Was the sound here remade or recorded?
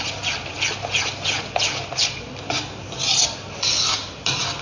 recorded